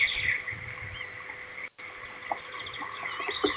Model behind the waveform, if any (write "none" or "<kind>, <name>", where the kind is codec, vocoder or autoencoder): none